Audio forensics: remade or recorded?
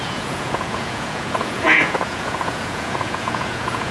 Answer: remade